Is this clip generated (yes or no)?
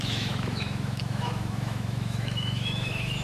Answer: yes